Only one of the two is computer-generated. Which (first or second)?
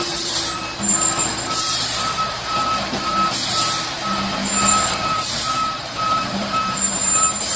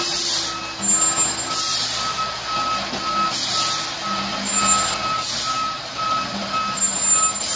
first